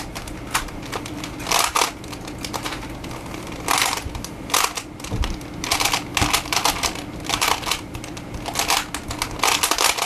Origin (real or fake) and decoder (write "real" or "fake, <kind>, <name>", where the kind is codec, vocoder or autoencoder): real